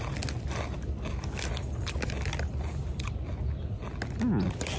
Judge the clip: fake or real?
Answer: real